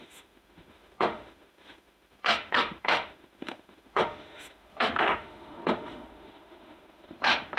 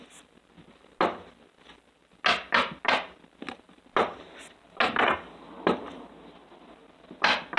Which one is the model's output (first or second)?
first